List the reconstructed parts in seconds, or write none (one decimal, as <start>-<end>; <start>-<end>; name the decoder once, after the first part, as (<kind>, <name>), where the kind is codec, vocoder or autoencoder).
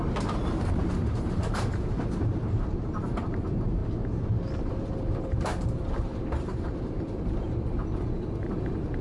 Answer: 0.0-3.8 (vocoder, BigVGAN v2); 4.7-9.0